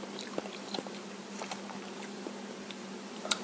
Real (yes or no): no